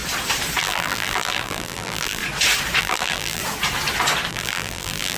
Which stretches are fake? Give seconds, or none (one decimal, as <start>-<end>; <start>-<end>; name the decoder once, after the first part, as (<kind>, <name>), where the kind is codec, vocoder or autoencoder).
0.6-2.2 (vocoder, BigVGAN v2); 2.8-3.4; 4.3-5.2